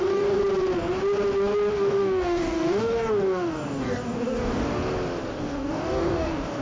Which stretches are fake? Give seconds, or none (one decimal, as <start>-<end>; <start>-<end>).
0.0-0.4; 1.7-4.8; 5.4-6.6